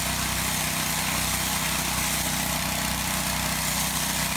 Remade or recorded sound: recorded